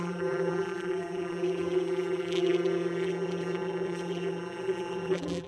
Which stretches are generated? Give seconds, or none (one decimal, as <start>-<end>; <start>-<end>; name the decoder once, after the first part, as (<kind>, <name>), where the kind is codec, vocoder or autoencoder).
0.0-5.5 (vocoder, BigVGAN v2)